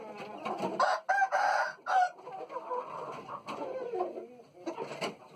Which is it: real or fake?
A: real